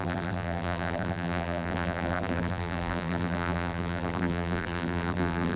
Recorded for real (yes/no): no